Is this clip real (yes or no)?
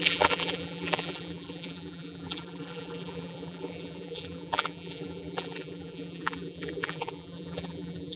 no